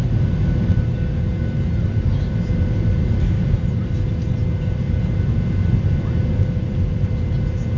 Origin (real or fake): real